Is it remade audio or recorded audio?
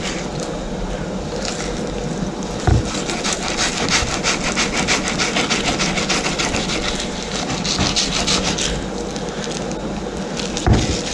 recorded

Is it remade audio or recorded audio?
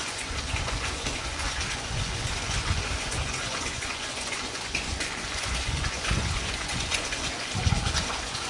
remade